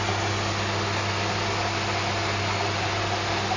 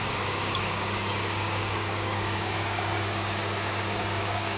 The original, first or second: first